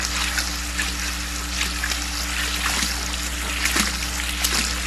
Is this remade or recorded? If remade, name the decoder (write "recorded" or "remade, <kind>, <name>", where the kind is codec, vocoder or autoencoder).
recorded